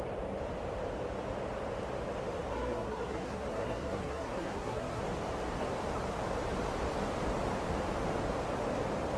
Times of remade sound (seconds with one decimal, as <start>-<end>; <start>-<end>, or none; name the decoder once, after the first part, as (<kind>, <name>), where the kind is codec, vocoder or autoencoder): 2.5-5.0 (codec, SNAC)